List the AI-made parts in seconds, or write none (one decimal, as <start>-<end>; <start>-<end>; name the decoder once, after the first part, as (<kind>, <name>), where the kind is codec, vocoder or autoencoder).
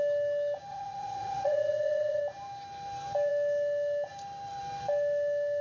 0.7-2.2 (vocoder, WaveNeXt)